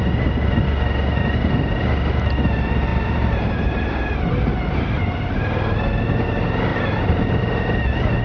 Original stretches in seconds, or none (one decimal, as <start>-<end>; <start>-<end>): 0.0-2.9; 4.2-6.7; 7.2-8.2